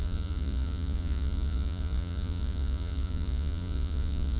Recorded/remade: remade